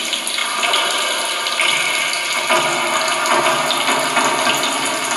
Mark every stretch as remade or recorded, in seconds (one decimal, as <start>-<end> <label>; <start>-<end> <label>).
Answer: 0.0-0.4 recorded; 0.4-2.1 remade; 2.1-5.2 recorded

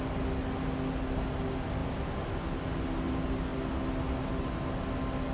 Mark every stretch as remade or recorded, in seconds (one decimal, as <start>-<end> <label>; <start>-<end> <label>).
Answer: 0.0-5.3 recorded